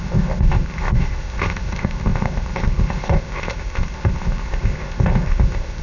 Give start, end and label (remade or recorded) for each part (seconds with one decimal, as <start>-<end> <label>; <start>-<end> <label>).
0.0-5.8 remade